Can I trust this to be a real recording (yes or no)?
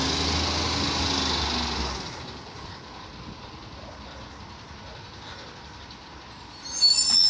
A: yes